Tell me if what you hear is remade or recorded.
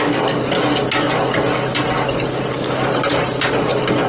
recorded